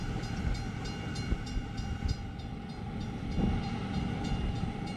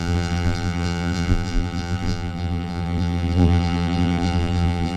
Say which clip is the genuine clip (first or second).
first